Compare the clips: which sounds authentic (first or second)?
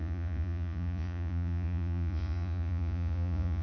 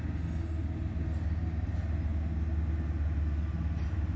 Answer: second